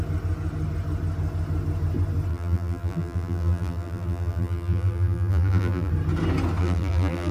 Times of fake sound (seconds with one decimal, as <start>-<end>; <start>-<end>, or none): 2.3-5.9; 6.6-7.3